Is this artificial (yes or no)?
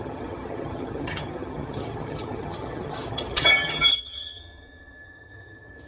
yes